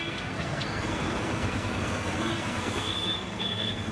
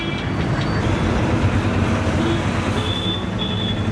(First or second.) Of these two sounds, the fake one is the first